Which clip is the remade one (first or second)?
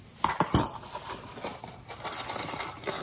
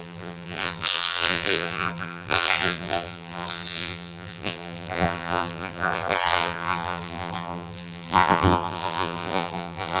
second